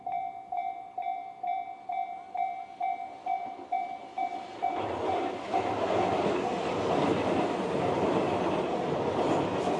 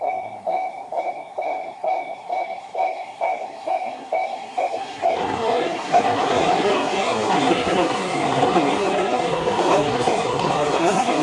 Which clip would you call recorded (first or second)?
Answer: first